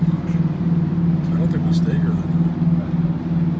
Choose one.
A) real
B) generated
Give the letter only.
A